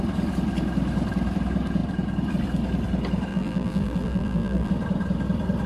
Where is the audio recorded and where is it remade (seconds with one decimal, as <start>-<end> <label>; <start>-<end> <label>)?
0.0-3.3 recorded; 3.3-4.7 remade; 4.7-5.7 recorded